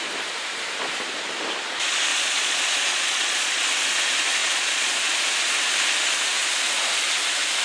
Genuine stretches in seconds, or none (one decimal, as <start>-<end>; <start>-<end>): 0.0-2.1; 3.6-4.4; 5.1-7.6